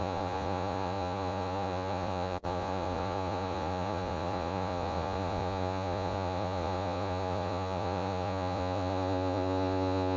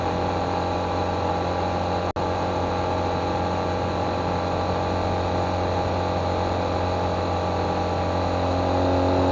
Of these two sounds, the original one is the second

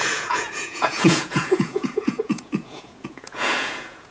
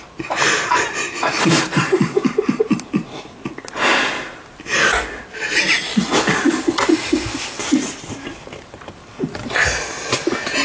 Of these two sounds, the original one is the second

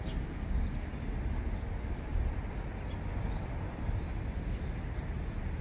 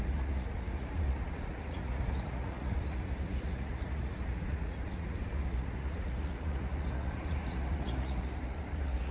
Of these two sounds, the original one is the first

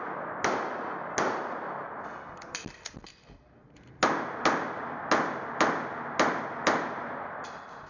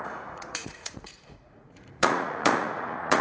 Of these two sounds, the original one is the first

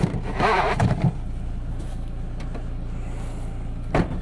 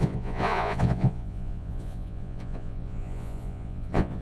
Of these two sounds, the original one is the first